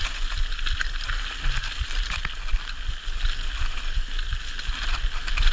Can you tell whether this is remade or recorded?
recorded